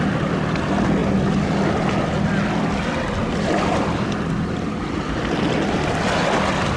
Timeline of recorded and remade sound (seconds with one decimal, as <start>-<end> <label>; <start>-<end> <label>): 0.0-6.8 recorded